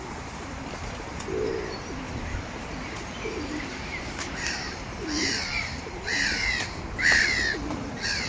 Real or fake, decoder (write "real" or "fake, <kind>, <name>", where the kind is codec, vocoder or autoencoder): fake, vocoder, BigVGAN v2